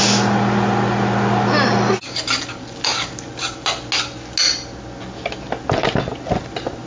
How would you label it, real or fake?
real